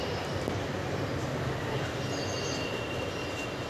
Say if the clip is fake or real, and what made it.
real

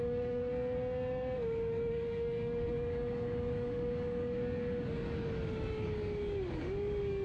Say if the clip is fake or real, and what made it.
fake, codec, DAC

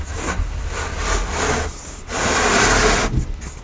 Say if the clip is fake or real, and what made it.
real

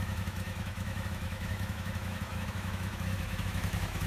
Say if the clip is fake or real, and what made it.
fake, autoencoder, DAC-VAE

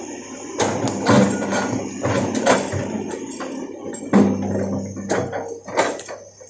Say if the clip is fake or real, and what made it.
real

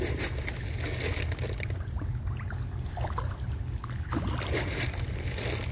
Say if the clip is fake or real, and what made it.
real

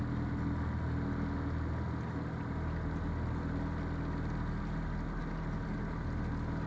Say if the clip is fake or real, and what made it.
real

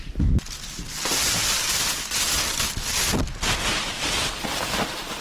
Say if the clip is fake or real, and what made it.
real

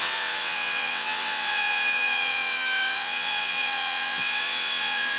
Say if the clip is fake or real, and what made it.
fake, vocoder, WaveNeXt